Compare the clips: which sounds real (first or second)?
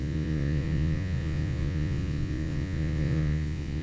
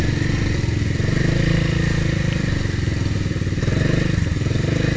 second